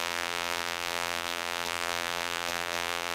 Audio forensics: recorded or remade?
remade